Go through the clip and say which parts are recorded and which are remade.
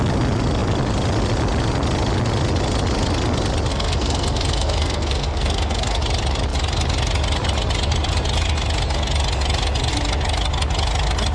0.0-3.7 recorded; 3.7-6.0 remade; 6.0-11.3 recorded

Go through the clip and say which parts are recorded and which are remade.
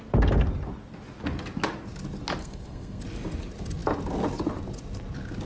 0.0-2.4 recorded; 2.4-3.0 remade; 3.0-5.5 recorded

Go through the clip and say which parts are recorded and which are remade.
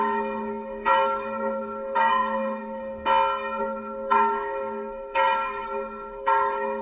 0.0-2.8 remade; 2.8-3.6 recorded; 3.6-6.8 remade